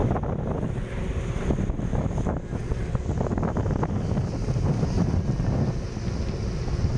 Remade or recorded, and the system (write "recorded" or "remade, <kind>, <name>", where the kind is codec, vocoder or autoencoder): recorded